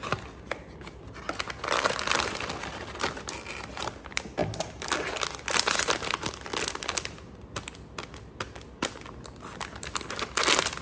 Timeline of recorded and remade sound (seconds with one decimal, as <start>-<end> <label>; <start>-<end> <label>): 0.0-10.8 recorded